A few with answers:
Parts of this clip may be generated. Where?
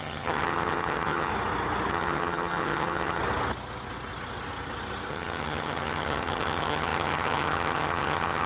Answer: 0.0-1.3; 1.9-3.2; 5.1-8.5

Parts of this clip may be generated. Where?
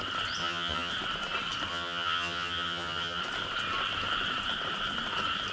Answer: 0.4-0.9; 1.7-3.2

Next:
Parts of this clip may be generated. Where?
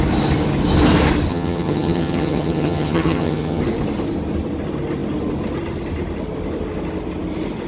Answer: 1.3-3.6